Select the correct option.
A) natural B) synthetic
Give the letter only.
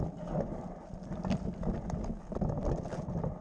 A